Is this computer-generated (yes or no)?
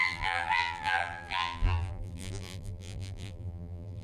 yes